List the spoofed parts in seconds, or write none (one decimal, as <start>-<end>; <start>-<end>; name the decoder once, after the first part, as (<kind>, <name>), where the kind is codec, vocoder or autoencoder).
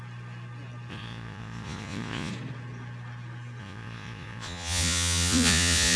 0.9-2.3 (vocoder, Vocos); 3.6-6.0